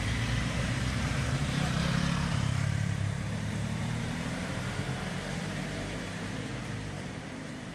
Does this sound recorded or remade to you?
remade